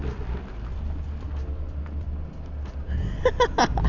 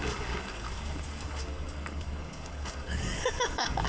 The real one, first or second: first